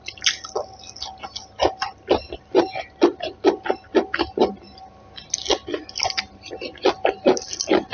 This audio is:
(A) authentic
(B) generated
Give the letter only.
A